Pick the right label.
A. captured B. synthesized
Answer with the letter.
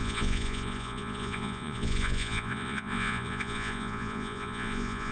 B